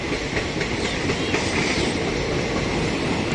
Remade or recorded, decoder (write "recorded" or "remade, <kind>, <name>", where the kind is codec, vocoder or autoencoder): recorded